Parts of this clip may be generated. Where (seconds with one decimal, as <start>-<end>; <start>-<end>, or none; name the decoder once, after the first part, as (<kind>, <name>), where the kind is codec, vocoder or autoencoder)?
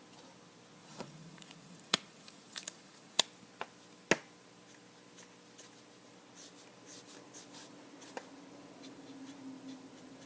0.8-3.2 (vocoder, Vocos)